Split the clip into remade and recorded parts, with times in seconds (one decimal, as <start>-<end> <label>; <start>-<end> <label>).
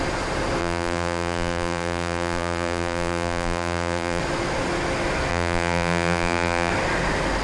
0.0-0.6 recorded; 0.6-4.2 remade; 4.2-5.3 recorded; 5.3-6.7 remade; 6.7-7.4 recorded